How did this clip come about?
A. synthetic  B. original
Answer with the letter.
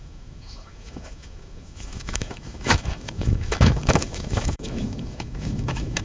A